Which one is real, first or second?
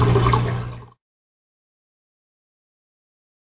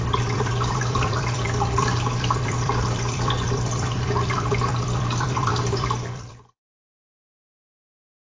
first